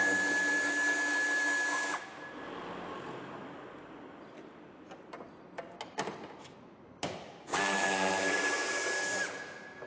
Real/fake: real